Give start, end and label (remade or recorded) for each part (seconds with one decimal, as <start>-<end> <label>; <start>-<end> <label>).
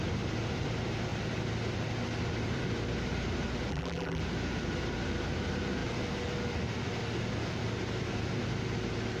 0.0-3.7 recorded; 3.7-4.2 remade; 4.2-9.2 recorded